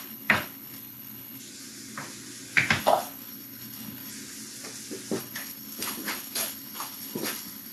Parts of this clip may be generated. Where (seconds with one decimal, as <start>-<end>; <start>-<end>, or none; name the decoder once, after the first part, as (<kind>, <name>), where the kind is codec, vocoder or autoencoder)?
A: 0.0-1.4 (codec, HILCodec); 2.8-4.1; 5.2-7.7